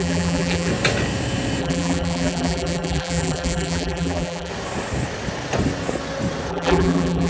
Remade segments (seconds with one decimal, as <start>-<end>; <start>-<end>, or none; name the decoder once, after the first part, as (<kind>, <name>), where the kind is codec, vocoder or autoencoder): 0.0-0.7 (vocoder, BigVGAN v2); 1.6-4.5; 6.5-7.3